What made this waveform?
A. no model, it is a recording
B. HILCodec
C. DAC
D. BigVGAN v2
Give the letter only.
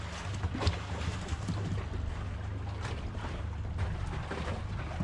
A